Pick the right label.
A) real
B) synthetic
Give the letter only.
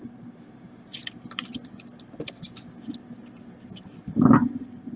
A